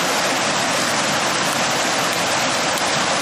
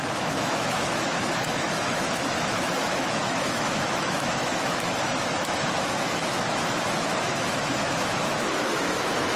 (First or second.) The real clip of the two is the first